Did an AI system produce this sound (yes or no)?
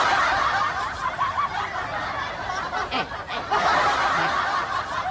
no